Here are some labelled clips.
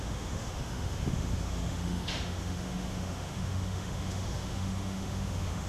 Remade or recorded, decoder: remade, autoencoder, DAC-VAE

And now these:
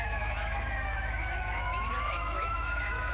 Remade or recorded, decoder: remade, autoencoder, DAC-VAE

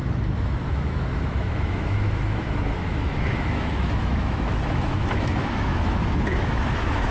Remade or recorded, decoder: remade, autoencoder, DAC-VAE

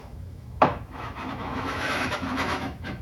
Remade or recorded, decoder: remade, autoencoder, DAC-VAE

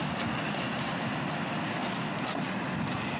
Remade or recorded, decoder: recorded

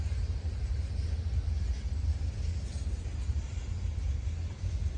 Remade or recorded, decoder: recorded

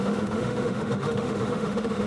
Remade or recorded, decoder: remade, autoencoder, DAC-VAE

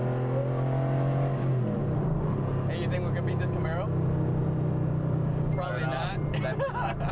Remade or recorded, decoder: recorded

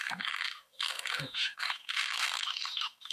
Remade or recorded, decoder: remade, autoencoder, DAC-VAE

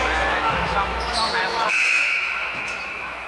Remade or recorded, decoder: remade, autoencoder, DAC-VAE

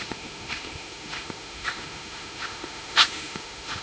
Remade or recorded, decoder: remade, autoencoder, DAC-VAE